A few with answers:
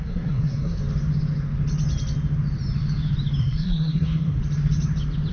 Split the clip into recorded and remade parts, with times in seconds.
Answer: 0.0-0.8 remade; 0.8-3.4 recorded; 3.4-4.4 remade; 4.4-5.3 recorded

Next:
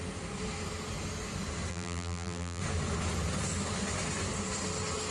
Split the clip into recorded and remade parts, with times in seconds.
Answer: 0.0-1.7 recorded; 1.7-2.6 remade; 2.6-5.1 recorded

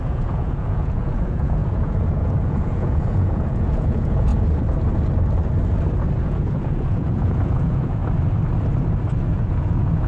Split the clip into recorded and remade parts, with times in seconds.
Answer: 0.0-4.3 remade; 4.3-6.2 recorded; 6.2-8.0 remade; 8.0-9.2 recorded; 9.2-10.1 remade

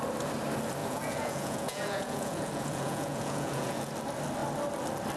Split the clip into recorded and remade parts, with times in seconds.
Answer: 0.0-0.8 recorded; 0.8-3.9 remade; 3.9-5.2 recorded

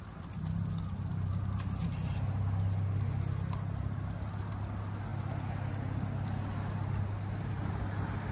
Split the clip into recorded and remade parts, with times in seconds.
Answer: 0.0-8.3 recorded

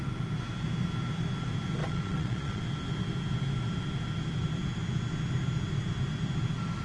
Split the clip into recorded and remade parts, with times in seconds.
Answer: 0.0-1.8 recorded; 1.8-2.6 remade; 2.6-6.8 recorded

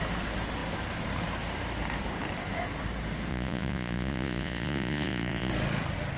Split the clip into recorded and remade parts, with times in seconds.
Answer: 0.0-3.3 recorded; 3.3-5.5 remade; 5.5-6.2 recorded